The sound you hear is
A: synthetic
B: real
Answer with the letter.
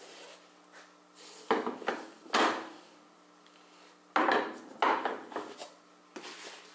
B